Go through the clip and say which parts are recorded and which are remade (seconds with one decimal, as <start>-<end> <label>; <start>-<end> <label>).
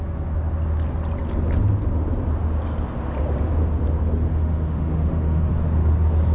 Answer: 0.0-4.3 recorded; 4.3-5.5 remade; 5.5-6.3 recorded